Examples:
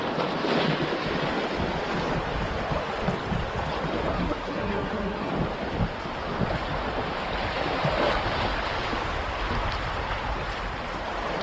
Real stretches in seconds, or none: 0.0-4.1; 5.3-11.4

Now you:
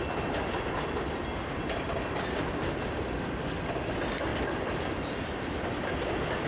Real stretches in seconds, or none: 0.0-6.5

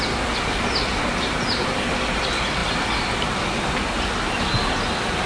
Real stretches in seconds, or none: 0.0-5.3

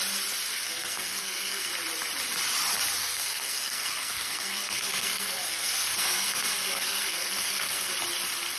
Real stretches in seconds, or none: 0.0-0.5; 1.7-3.0; 7.9-8.6

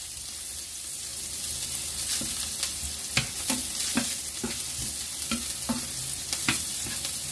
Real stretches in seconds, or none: 0.0-7.3

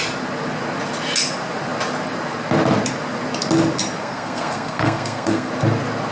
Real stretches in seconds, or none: 0.0-4.0; 5.5-6.1

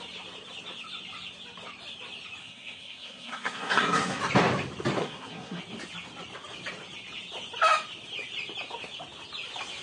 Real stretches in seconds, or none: 0.0-2.4; 4.2-5.0; 5.6-9.8

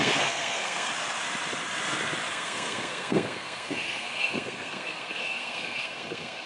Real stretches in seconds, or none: 0.9-2.3